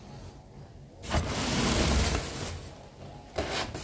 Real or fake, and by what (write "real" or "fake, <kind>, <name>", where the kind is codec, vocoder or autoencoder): real